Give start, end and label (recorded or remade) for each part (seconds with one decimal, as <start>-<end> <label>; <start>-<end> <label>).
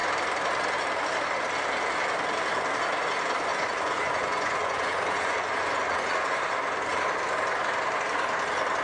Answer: 0.0-3.5 recorded; 3.5-6.4 remade; 6.4-8.8 recorded